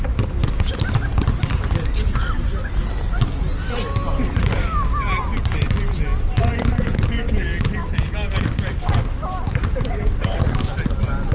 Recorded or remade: recorded